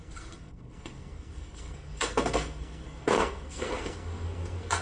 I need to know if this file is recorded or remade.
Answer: remade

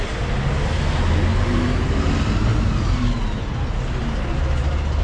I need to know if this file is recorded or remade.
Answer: recorded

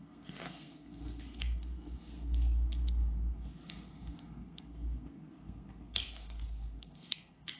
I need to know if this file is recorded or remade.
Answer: remade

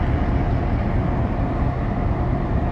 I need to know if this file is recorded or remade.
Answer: recorded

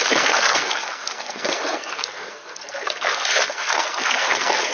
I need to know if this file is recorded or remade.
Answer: remade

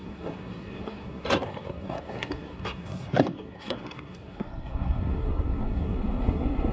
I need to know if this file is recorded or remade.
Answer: remade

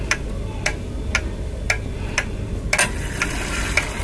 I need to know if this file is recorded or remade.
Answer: recorded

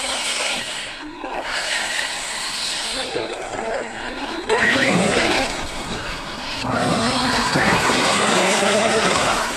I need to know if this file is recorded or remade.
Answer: remade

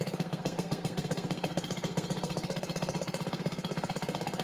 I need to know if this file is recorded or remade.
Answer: remade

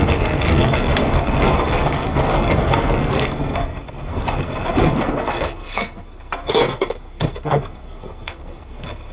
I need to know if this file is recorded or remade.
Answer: remade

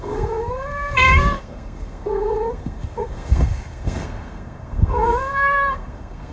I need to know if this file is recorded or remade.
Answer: remade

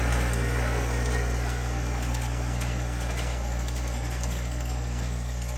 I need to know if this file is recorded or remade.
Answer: remade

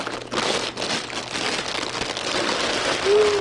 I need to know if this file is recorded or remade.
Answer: recorded